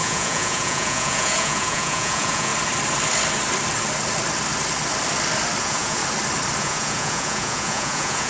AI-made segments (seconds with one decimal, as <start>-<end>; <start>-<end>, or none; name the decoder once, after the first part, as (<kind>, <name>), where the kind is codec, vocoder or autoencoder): 0.0-2.5 (vocoder, Vocos); 5.6-6.0; 6.6-8.3